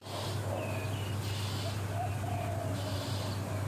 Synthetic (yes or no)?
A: no